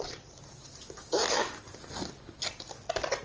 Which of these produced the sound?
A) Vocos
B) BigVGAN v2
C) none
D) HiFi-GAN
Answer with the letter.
C